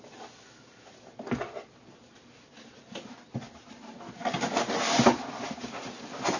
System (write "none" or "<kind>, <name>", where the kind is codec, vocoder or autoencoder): none